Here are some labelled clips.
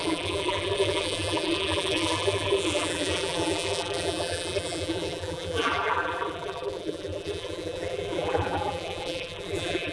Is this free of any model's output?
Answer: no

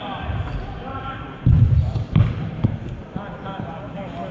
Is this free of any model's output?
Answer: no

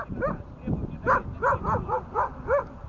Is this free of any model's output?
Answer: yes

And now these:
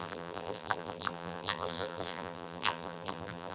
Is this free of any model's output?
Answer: no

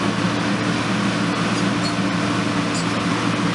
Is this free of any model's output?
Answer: yes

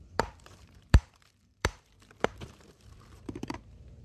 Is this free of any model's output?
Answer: no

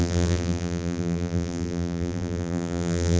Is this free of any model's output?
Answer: no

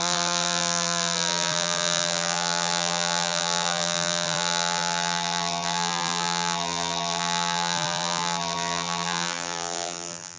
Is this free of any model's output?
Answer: no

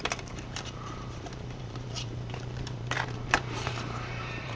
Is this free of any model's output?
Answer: no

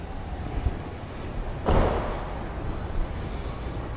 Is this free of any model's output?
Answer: yes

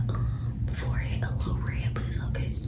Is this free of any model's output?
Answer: yes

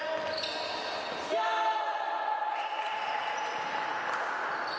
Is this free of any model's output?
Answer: yes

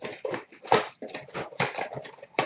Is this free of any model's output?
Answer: yes